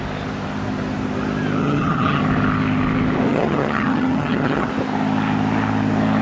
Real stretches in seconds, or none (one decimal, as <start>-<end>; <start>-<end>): 0.0-1.6; 2.2-3.3; 4.7-6.2